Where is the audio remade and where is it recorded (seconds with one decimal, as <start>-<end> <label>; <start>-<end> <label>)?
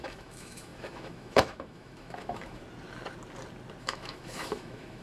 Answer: 0.0-2.6 remade; 2.6-3.8 recorded; 3.8-5.0 remade